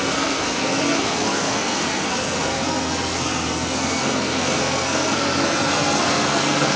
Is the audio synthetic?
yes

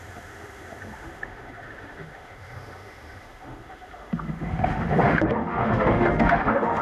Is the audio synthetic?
yes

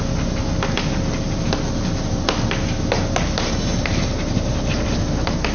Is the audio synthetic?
no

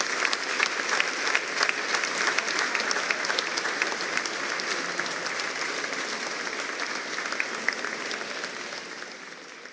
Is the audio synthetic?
no